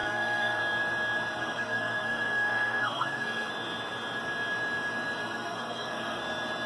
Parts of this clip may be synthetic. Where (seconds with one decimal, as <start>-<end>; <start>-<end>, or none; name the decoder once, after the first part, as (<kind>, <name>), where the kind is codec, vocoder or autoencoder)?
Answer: 0.0-0.6 (codec, SNAC); 1.4-3.5; 5.2-6.2